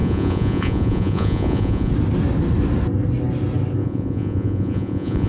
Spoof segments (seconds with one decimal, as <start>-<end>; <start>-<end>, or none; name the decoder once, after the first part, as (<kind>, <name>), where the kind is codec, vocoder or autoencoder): 0.0-1.9 (vocoder, Vocos); 3.8-5.3